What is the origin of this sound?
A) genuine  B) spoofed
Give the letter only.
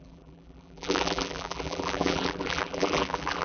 B